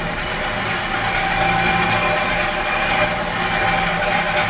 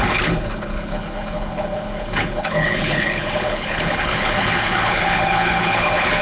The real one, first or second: first